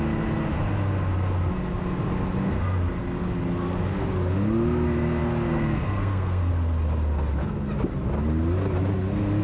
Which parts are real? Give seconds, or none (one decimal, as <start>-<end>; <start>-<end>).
0.0-5.5; 6.5-9.4